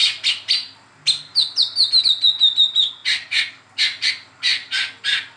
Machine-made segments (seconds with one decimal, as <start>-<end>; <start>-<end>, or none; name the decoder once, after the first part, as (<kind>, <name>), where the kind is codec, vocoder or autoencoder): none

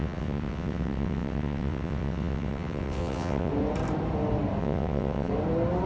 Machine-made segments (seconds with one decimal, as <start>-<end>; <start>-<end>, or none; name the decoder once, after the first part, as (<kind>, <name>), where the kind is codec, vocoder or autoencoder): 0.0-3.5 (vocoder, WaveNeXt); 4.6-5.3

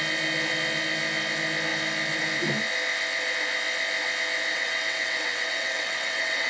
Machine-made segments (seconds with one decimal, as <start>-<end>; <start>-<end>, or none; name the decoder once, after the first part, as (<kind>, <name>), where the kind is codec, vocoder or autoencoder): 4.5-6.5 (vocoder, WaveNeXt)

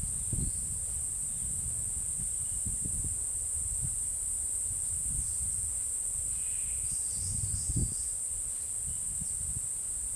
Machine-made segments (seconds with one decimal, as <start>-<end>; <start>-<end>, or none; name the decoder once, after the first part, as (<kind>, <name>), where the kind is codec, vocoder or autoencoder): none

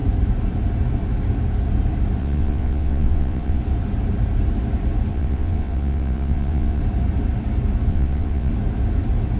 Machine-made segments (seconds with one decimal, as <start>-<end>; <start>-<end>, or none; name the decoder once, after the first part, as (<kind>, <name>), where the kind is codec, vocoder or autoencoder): 2.2-3.6 (vocoder, WaveNeXt); 5.1-6.8; 7.9-8.5

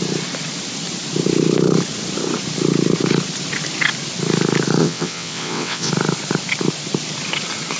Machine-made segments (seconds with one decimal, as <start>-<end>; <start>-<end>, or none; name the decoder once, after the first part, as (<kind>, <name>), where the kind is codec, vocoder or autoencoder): 4.8-5.9 (vocoder, WaveNeXt)

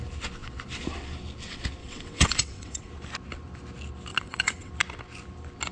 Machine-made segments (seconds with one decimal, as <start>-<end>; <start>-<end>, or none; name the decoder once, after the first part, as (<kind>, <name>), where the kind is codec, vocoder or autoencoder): 1.8-2.9 (vocoder, WaveNeXt); 4.1-4.7

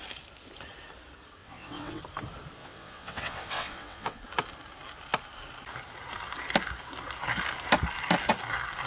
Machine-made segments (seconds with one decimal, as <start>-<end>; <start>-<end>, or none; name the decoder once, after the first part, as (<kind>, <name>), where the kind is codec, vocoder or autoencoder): 1.4-2.0 (vocoder, WaveNeXt); 2.6-4.2